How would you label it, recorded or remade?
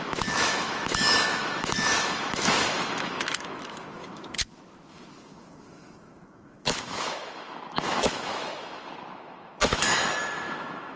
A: remade